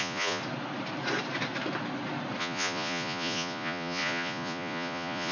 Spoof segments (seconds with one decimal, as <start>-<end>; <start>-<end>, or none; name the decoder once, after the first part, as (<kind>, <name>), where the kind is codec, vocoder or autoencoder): 0.0-0.4 (vocoder, Vocos); 2.4-5.3